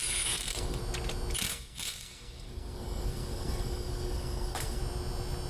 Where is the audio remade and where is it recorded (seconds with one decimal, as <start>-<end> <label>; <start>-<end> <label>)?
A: 0.0-0.8 remade; 0.8-1.5 recorded; 1.5-4.8 remade; 4.8-5.5 recorded